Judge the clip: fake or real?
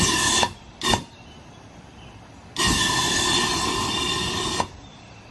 real